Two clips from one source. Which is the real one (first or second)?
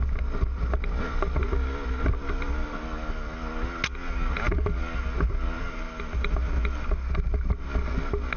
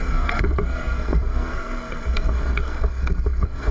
first